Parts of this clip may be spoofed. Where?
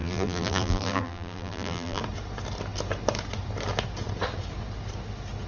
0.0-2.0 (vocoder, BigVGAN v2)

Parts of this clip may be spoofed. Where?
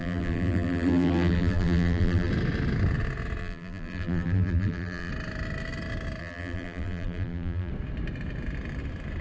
0.0-2.3 (vocoder, BigVGAN v2); 3.4-5.1; 6.2-7.7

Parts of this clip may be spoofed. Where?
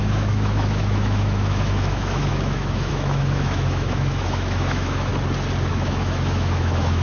0.0-5.1 (autoencoder, DAC-VAE); 5.7-7.0